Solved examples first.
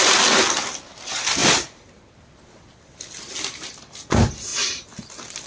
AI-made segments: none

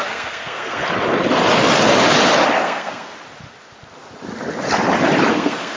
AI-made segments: 0.0-0.8 (codec, SNAC); 2.6-3.1; 5.3-5.8

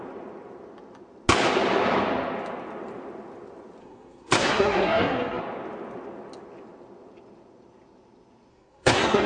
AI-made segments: 3.8-5.4 (codec, SNAC); 8.5-9.3

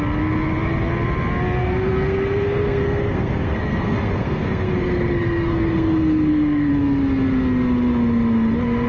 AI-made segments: 1.6-6.7 (codec, SNAC)

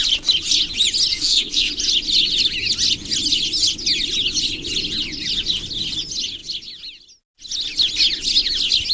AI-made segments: 1.1-1.7 (codec, SNAC)

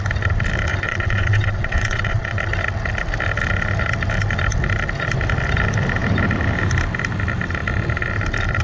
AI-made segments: 0.7-2.4 (vocoder, WaveNeXt)